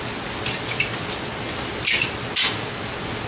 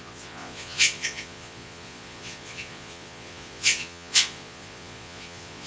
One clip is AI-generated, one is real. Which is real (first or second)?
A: first